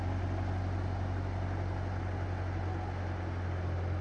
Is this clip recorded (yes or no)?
yes